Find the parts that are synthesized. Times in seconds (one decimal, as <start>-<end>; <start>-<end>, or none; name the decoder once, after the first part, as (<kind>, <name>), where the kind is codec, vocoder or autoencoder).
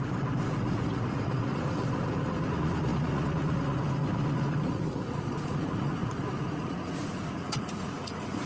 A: 0.0-8.5 (vocoder, Vocos)